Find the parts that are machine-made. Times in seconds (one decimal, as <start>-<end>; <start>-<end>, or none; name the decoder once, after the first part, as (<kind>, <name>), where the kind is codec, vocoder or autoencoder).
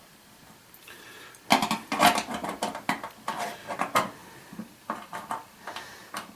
4.2-6.4 (vocoder, BigVGAN v2)